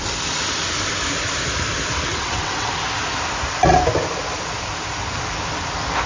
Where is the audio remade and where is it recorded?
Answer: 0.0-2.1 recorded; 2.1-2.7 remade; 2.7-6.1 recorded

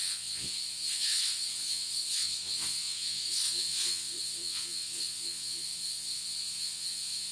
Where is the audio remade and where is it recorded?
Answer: 0.0-7.3 remade